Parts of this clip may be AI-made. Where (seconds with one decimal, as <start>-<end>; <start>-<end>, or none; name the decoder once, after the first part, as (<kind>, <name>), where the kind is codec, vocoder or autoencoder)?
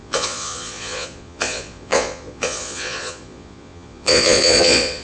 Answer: 0.0-5.0 (vocoder, Vocos)